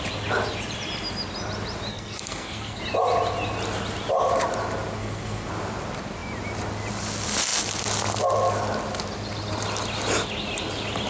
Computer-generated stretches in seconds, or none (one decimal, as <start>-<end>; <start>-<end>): 1.9-2.8; 5.0-5.5